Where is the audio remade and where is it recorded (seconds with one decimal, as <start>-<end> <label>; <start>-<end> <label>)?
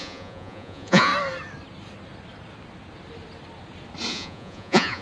0.0-1.1 remade; 1.1-4.1 recorded; 4.1-5.0 remade